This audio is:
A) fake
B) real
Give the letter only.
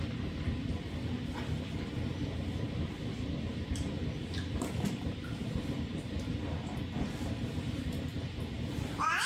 B